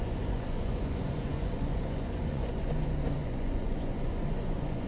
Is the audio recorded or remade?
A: remade